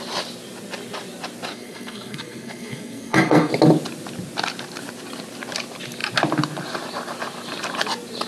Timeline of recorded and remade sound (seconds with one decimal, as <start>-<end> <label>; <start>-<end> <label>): 0.0-1.5 recorded; 1.5-3.5 remade; 3.5-8.3 recorded